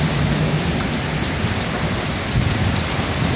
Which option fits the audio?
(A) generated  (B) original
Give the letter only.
B